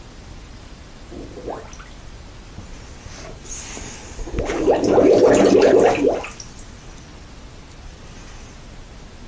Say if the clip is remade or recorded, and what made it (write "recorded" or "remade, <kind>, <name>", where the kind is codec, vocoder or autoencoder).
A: recorded